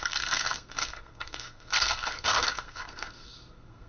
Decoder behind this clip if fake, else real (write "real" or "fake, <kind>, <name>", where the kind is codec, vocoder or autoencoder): fake, codec, SNAC